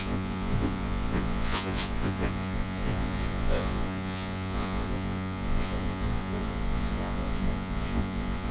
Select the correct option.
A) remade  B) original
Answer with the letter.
A